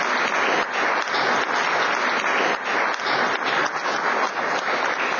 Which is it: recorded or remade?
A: recorded